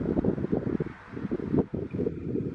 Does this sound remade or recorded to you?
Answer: recorded